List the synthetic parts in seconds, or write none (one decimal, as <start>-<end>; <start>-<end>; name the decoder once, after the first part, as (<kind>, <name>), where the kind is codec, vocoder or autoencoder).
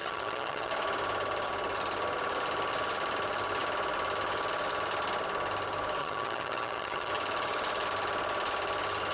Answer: 0.0-0.7 (vocoder, HiFi-GAN); 6.0-7.1